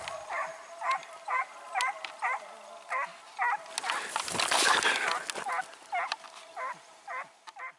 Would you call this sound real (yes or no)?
yes